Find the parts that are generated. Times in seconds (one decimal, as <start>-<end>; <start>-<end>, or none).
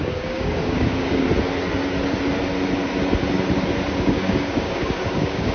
0.0-1.3; 3.9-5.5